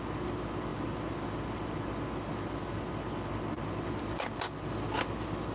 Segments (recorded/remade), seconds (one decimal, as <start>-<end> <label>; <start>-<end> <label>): 0.0-5.5 recorded